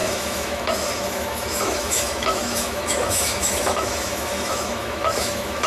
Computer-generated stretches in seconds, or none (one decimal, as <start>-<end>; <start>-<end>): 0.0-5.7